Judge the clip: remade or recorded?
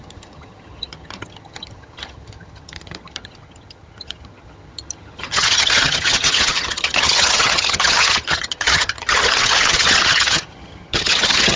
remade